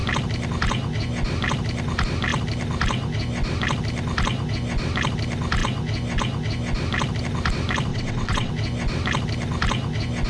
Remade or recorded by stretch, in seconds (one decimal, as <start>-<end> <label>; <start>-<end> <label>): 0.0-7.9 recorded; 7.9-8.5 remade; 8.5-10.3 recorded